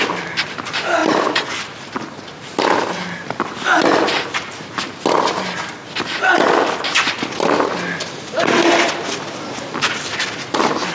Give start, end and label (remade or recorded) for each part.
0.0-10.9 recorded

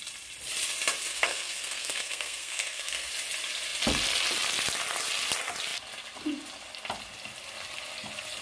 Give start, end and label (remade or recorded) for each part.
0.0-1.1 recorded; 1.1-3.1 remade; 3.1-8.4 recorded

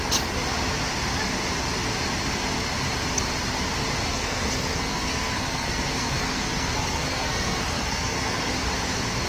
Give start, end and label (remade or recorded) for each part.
0.0-4.1 recorded; 4.1-8.5 remade; 8.5-9.3 recorded

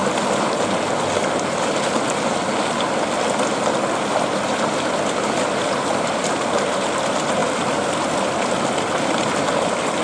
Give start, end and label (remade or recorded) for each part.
0.0-10.0 recorded